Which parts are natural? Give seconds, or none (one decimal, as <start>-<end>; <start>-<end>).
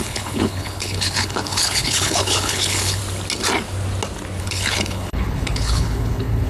3.0-4.4